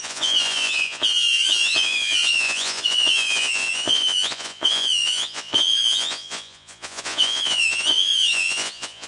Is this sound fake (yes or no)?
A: yes